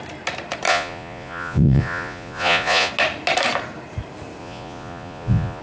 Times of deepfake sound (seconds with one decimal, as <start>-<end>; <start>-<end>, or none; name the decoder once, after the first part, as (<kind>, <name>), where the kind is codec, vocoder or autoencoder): 0.7-2.9 (vocoder, Vocos); 4.4-5.6